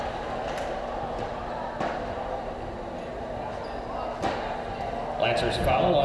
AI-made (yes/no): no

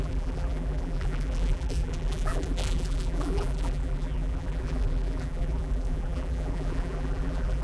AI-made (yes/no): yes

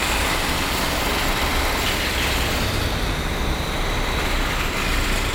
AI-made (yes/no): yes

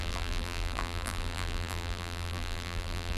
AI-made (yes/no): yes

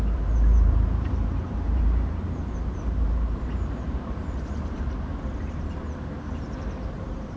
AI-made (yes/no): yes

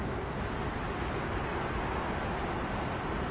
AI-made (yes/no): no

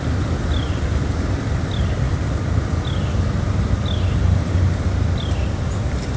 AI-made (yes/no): yes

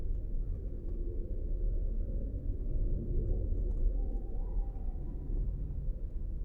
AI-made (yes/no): no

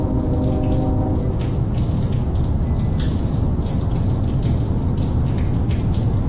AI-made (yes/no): no